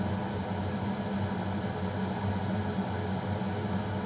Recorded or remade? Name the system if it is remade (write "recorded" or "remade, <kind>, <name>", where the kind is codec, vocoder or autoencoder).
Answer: recorded